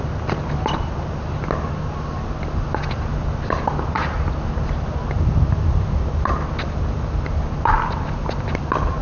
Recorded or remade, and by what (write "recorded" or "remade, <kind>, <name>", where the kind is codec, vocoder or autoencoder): recorded